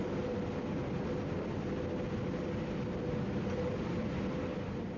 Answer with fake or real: real